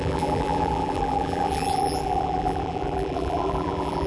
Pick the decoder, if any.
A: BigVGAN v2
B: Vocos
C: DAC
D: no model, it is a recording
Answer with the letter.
A